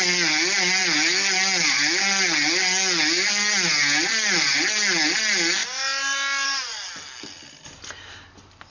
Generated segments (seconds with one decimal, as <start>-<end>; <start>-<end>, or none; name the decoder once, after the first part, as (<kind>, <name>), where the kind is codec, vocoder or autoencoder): none